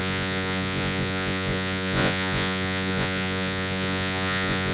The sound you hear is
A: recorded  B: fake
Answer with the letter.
B